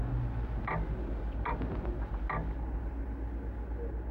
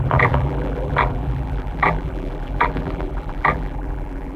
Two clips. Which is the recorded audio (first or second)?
first